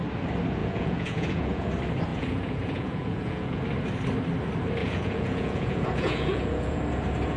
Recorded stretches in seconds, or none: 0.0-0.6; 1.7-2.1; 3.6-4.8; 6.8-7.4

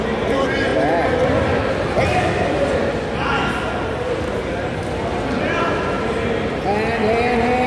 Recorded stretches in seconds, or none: 0.0-7.7

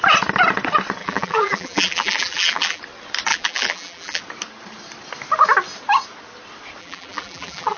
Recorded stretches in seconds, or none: 0.0-1.0; 2.8-3.3; 4.2-6.8

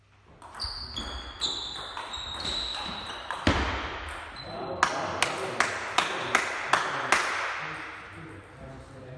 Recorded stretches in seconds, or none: 0.0-2.7; 3.4-9.2

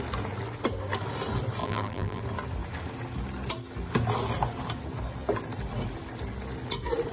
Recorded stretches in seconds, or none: 0.0-1.6; 2.2-7.1

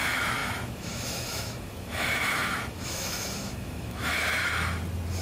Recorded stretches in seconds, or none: 4.4-5.2

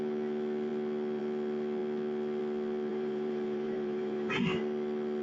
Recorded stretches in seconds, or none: 0.0-2.9; 4.6-5.2